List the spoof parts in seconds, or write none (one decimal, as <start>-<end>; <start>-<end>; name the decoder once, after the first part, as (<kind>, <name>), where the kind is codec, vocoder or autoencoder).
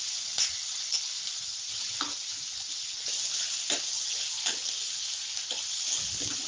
none